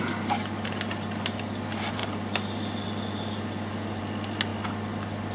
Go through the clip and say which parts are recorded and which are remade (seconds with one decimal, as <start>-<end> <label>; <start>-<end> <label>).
0.0-5.3 recorded